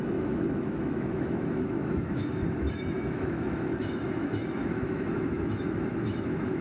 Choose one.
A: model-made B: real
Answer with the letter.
A